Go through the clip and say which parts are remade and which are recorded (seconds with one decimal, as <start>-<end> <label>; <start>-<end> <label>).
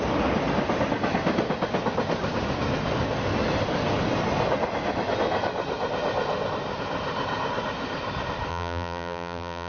0.0-8.5 recorded; 8.5-9.7 remade